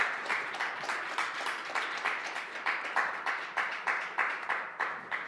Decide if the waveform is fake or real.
fake